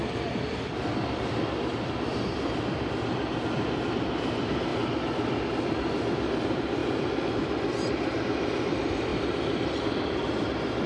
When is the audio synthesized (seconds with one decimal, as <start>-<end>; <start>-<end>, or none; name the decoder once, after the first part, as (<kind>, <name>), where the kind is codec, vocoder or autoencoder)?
0.0-4.7 (vocoder, BigVGAN v2); 5.5-10.9